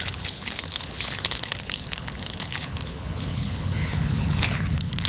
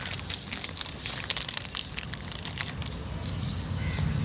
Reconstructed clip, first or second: first